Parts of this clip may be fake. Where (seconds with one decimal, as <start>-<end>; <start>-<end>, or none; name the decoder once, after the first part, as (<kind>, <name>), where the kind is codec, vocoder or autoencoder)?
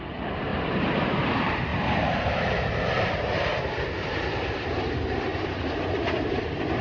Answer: 0.0-0.5 (vocoder, BigVGAN v2); 1.2-3.5; 4.5-6.8